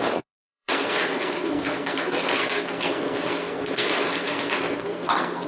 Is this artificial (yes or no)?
yes